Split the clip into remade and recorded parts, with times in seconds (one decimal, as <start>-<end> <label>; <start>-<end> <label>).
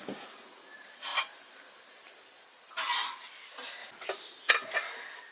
0.0-1.1 recorded; 1.1-2.7 remade; 2.7-5.3 recorded